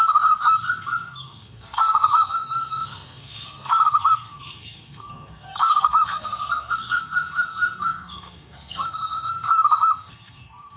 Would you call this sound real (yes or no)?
no